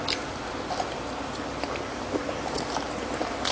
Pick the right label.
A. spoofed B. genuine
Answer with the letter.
B